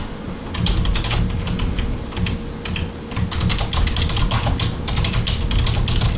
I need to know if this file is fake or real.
real